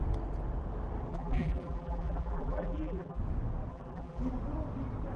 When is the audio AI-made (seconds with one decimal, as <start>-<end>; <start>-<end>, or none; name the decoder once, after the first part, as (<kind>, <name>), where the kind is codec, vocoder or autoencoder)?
1.1-3.2 (vocoder, BigVGAN v2); 3.7-4.3